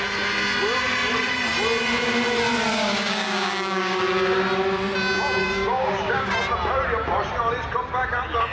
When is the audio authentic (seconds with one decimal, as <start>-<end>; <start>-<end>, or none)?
0.0-2.7; 4.0-5.4; 6.4-8.5